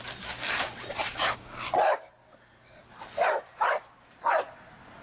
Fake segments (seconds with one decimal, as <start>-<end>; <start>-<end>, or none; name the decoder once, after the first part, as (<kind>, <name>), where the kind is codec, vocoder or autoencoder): 1.1-1.7 (codec, DAC)